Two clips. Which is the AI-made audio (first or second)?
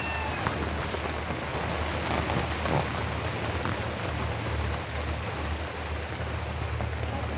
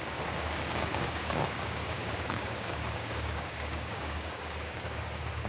second